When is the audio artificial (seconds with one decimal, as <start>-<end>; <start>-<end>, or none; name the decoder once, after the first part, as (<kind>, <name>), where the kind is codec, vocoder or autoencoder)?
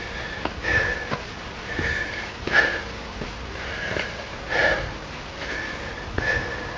none